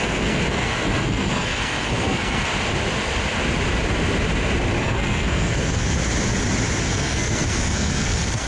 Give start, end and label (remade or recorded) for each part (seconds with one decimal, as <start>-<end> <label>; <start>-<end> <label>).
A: 0.0-2.5 remade; 2.5-4.8 recorded; 4.8-6.0 remade; 6.0-6.8 recorded; 6.8-8.5 remade